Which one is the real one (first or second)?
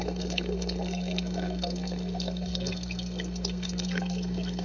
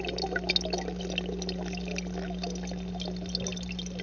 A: second